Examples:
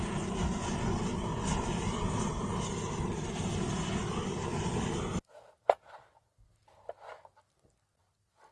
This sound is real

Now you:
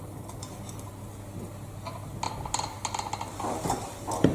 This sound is real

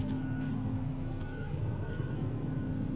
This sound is fake